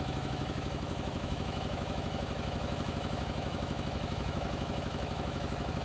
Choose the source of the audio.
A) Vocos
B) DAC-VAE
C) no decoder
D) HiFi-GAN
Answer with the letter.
B